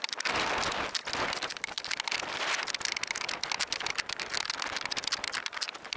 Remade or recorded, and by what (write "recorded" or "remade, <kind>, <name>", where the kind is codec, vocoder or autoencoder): recorded